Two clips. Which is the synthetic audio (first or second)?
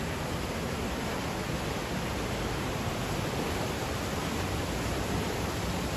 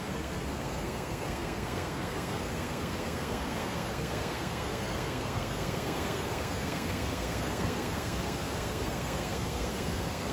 second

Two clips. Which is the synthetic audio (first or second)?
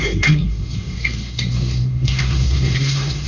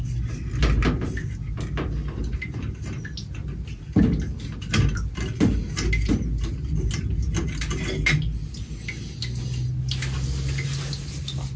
first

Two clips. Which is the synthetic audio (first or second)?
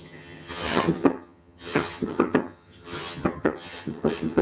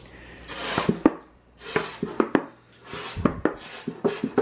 first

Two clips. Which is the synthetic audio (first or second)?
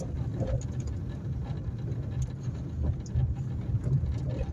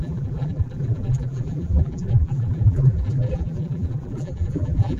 second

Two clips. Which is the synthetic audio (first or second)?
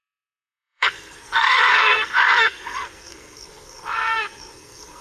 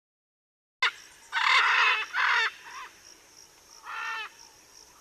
first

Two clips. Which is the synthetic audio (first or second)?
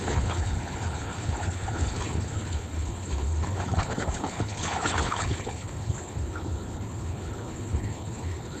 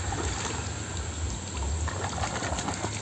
first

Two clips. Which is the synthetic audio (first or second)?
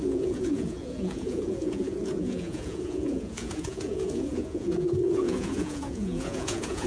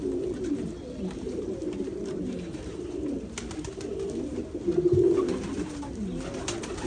first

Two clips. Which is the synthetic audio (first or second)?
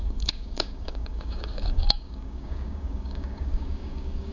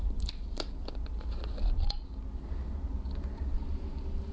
first